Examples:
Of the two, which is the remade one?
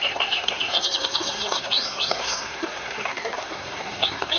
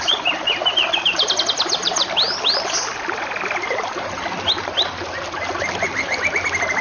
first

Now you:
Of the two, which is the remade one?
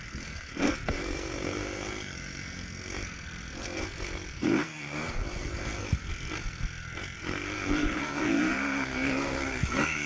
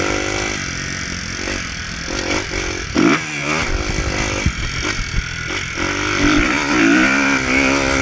first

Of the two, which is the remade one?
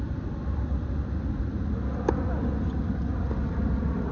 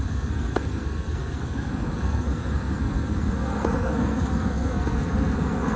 second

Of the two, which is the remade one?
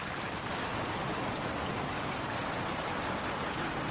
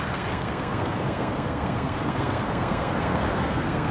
second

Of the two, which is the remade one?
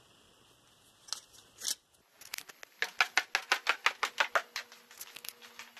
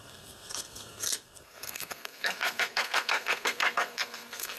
second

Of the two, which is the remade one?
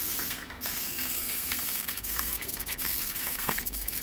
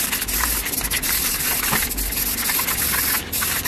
first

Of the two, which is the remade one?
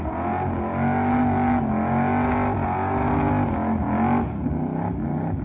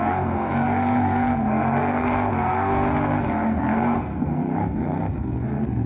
second